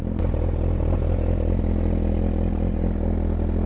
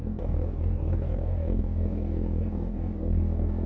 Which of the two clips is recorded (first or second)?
first